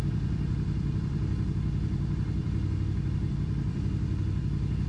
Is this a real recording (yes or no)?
no